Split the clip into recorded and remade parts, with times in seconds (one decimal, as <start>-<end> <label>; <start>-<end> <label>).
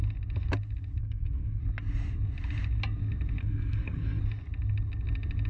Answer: 0.0-1.0 recorded; 1.0-1.6 remade; 1.6-3.4 recorded; 3.4-4.2 remade; 4.2-5.5 recorded